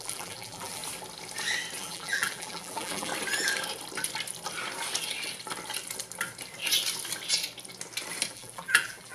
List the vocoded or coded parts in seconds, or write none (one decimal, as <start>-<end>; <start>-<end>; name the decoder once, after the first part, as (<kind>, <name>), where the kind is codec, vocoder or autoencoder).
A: 0.0-0.8 (vocoder, BigVGAN v2); 1.8-3.1; 8.3-9.1